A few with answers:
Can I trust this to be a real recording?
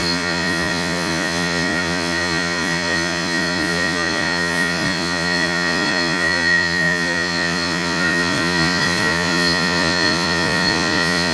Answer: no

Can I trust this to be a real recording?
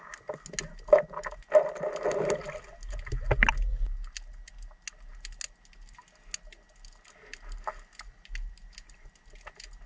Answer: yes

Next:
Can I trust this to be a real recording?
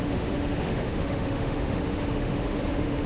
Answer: no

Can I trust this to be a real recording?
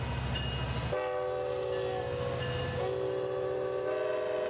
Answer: yes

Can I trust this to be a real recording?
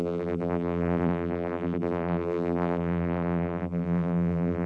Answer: no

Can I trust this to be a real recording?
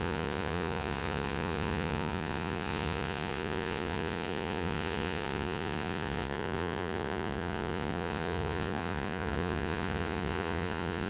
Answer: no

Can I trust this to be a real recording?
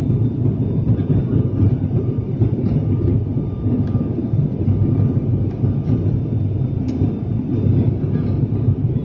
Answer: yes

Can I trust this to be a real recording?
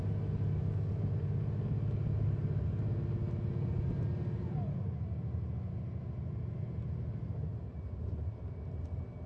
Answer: yes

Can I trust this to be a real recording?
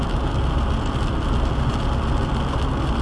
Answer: yes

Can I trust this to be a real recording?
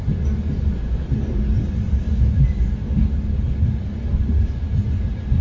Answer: yes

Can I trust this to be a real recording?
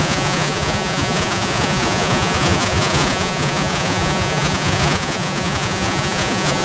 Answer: no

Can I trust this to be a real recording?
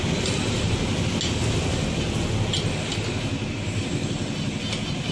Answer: yes